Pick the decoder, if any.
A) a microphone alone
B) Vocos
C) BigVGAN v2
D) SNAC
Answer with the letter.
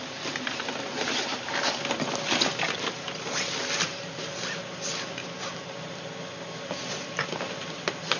C